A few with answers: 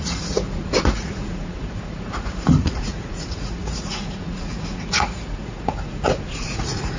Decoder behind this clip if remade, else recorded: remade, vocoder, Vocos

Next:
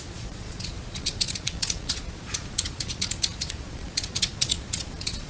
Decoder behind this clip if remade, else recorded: remade, vocoder, Vocos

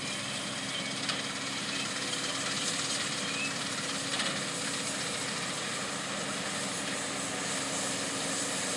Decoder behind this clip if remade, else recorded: recorded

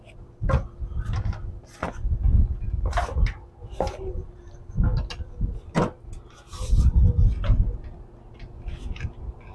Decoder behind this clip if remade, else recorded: recorded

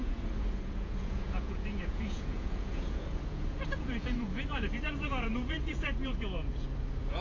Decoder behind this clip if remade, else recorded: remade, vocoder, Vocos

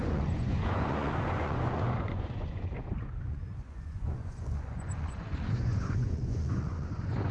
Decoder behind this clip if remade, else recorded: remade, vocoder, Vocos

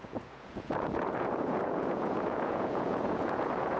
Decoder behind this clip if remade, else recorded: remade, vocoder, Vocos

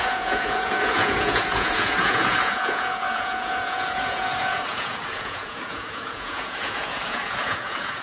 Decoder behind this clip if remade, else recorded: remade, vocoder, Vocos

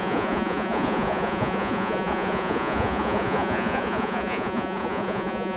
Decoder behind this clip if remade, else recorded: remade, vocoder, Vocos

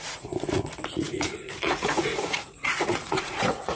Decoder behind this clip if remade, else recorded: remade, vocoder, Vocos